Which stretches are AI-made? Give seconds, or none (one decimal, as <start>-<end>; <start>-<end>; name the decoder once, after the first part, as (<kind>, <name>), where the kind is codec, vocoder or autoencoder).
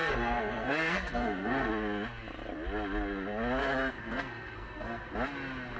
0.0-1.7 (codec, SNAC); 3.6-5.1